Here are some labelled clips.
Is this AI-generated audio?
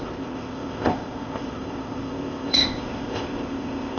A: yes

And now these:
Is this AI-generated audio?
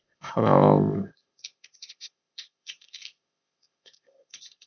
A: yes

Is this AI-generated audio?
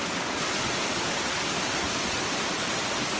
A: no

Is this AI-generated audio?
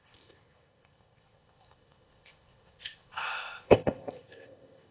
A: yes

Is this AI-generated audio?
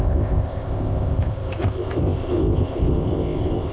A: yes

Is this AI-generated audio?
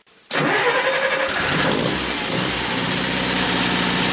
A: no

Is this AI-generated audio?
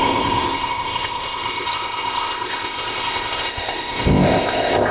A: yes